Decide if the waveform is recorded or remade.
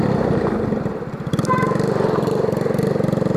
recorded